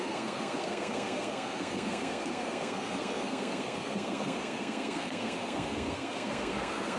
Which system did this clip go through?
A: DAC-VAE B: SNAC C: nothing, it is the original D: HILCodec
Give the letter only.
B